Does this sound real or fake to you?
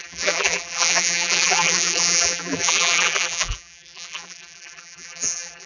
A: fake